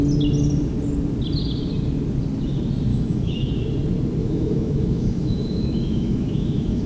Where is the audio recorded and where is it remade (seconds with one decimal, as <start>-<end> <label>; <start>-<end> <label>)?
0.0-2.9 recorded; 2.9-3.5 remade; 3.5-4.2 recorded; 4.2-6.9 remade